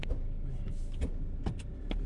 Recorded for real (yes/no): yes